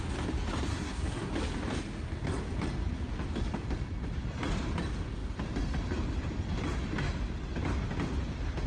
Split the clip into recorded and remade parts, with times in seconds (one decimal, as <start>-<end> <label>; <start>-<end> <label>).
0.0-0.7 recorded; 0.7-1.3 remade; 1.3-8.7 recorded

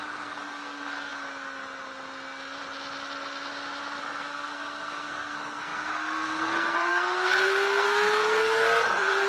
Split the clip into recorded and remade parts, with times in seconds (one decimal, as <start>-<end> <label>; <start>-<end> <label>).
0.0-1.1 remade; 1.1-4.0 recorded; 4.0-9.3 remade